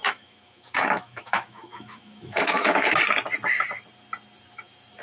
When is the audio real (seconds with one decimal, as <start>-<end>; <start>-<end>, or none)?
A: 3.0-5.0